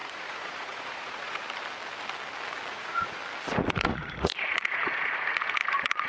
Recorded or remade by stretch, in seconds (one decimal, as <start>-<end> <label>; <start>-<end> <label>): 0.0-1.4 remade; 1.4-2.7 recorded; 2.7-3.2 remade; 3.2-3.7 recorded; 3.7-6.1 remade